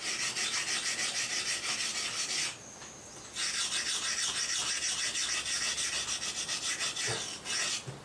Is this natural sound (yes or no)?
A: yes